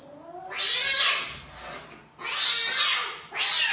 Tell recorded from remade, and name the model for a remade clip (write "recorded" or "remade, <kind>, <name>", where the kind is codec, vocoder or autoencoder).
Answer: recorded